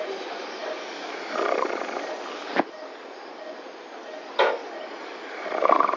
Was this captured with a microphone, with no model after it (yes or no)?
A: yes